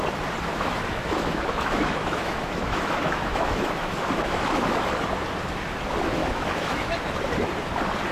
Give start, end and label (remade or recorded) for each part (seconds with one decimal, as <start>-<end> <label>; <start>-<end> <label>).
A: 0.0-0.5 recorded; 0.5-5.0 remade; 5.0-6.2 recorded; 6.2-7.0 remade; 7.0-8.1 recorded